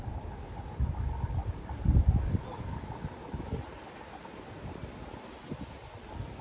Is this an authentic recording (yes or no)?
yes